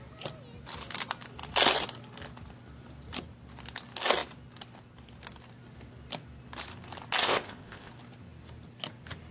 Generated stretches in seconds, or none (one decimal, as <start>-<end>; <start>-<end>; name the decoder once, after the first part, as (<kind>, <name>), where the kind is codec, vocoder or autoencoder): 7.2-7.9 (codec, ZipCodec)